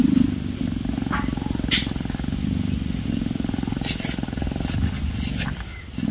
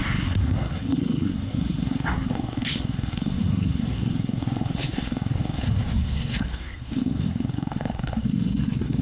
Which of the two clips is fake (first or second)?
second